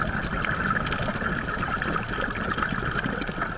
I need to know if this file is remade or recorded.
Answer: recorded